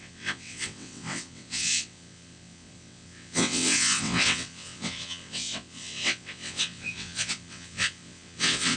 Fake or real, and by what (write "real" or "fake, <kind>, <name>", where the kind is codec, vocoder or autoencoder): fake, vocoder, WaveNeXt